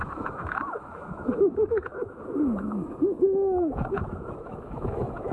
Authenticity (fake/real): fake